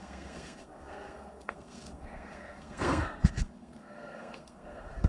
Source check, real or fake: fake